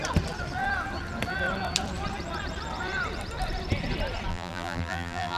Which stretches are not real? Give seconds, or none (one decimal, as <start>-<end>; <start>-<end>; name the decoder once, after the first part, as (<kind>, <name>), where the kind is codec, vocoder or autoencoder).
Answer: 4.3-5.4 (vocoder, BigVGAN v2)